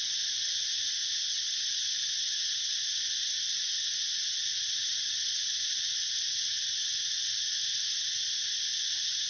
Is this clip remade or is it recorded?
recorded